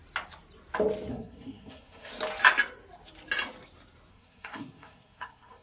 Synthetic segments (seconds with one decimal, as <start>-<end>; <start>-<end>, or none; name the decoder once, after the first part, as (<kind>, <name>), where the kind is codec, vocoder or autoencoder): 1.1-2.1 (codec, SNAC); 4.1-5.6